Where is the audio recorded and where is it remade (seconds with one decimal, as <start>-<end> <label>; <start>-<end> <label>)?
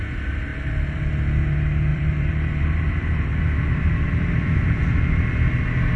0.0-0.5 recorded; 0.5-1.1 remade; 1.1-1.9 recorded; 1.9-5.3 remade; 5.3-6.0 recorded